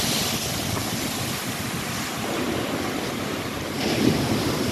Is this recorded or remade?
recorded